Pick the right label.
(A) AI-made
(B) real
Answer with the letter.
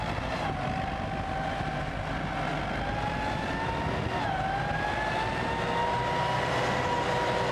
B